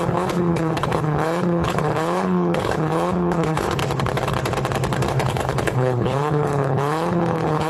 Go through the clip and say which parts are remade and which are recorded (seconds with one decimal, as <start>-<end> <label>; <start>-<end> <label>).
0.0-3.8 remade; 3.8-5.1 recorded; 5.1-7.7 remade